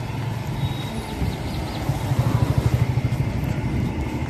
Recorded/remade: recorded